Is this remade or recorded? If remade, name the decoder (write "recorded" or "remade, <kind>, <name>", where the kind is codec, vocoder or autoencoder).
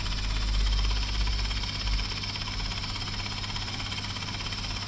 recorded